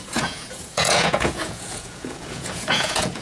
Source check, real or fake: fake